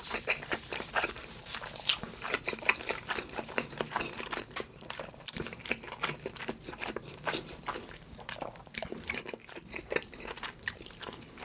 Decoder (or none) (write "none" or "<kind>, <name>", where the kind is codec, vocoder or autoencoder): vocoder, BigVGAN v2